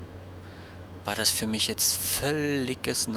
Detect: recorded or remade remade